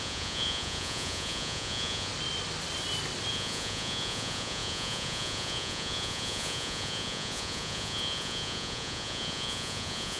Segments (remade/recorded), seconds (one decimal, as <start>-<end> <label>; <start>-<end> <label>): 0.0-2.1 remade; 2.1-3.3 recorded; 3.3-10.2 remade

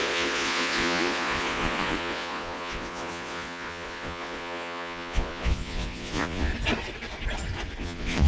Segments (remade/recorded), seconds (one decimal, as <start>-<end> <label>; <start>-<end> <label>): 0.0-6.5 remade; 6.5-7.8 recorded; 7.8-8.3 remade